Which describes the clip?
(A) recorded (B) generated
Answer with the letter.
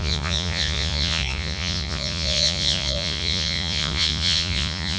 B